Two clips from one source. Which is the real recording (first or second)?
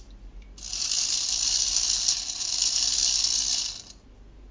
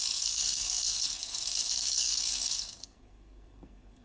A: first